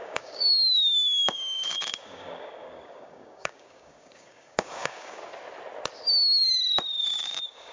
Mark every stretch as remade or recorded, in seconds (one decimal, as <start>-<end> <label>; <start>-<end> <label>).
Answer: 0.0-5.2 remade; 5.2-7.0 recorded; 7.0-7.7 remade